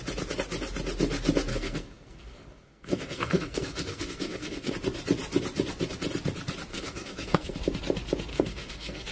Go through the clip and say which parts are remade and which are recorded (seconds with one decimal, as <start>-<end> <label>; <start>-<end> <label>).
0.0-1.5 recorded; 1.5-4.7 remade; 4.7-6.7 recorded; 6.7-7.6 remade; 7.6-8.3 recorded; 8.3-9.1 remade